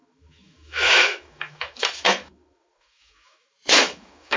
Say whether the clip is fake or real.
fake